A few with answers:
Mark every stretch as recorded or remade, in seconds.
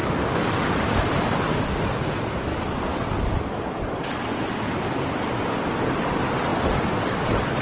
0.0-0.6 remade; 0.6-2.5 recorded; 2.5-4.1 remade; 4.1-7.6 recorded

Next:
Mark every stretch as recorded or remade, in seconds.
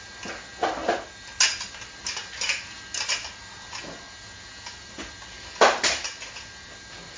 0.0-7.2 recorded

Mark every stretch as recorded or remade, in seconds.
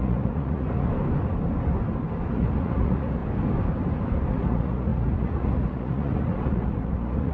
0.0-0.9 remade; 0.9-2.3 recorded; 2.3-3.2 remade; 3.2-4.3 recorded; 4.3-7.3 remade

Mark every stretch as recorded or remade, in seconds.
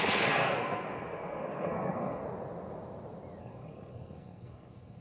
0.0-2.2 remade; 2.2-3.4 recorded; 3.4-5.0 remade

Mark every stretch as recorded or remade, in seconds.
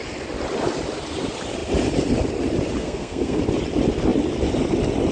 0.0-2.8 recorded; 2.8-3.4 remade; 3.4-5.1 recorded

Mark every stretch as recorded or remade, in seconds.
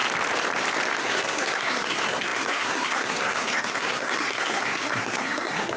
0.0-1.0 recorded; 1.0-5.8 remade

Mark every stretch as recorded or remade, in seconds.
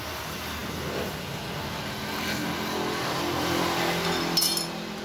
0.0-5.0 recorded